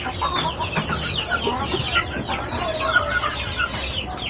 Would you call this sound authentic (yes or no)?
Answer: yes